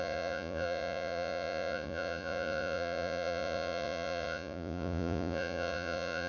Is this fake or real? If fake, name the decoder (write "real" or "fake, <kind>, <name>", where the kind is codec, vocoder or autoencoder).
fake, vocoder, Vocos